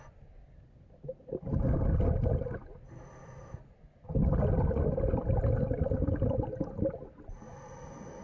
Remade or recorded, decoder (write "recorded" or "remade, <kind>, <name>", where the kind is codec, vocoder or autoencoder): recorded